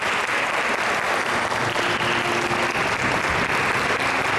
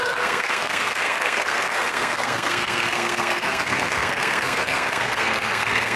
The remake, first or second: second